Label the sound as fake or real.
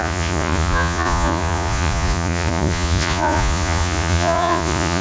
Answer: fake